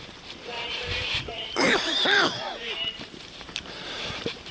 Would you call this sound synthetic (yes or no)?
yes